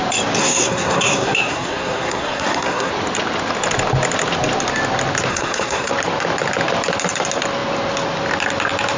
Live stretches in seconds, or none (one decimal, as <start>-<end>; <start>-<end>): 0.0-0.4; 2.9-5.3; 5.9-9.0